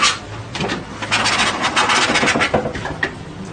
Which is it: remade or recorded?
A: recorded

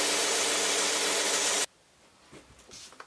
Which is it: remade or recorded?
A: recorded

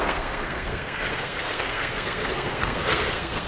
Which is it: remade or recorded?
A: remade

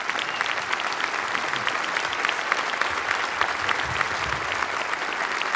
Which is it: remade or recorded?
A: recorded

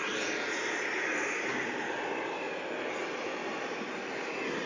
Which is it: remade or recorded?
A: recorded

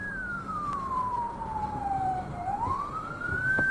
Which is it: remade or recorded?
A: remade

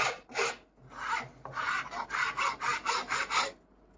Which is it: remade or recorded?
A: recorded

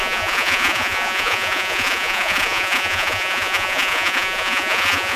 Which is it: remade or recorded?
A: remade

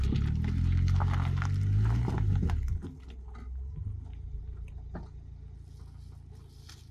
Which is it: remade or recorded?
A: recorded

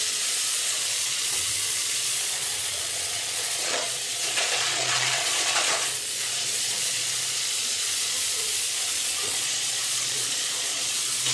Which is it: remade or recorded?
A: remade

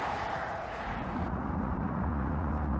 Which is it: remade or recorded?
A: remade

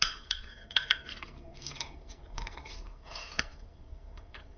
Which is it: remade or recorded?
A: remade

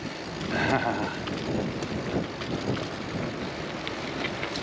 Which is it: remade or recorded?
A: recorded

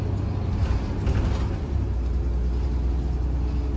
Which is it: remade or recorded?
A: recorded